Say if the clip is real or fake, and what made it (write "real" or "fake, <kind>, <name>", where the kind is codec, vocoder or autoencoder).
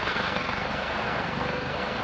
fake, codec, SNAC